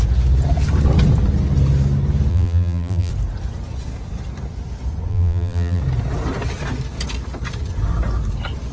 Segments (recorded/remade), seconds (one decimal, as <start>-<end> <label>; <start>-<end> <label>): 0.0-2.3 recorded; 2.3-3.1 remade; 3.1-5.1 recorded; 5.1-5.8 remade; 5.8-8.7 recorded